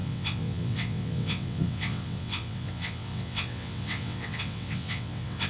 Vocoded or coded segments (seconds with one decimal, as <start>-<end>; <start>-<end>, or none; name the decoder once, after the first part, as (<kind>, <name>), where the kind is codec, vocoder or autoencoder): 0.0-5.5 (vocoder, WaveNeXt)